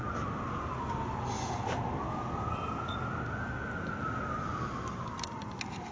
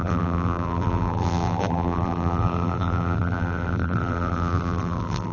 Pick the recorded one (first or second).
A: first